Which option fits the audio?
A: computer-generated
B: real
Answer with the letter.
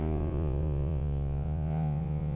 A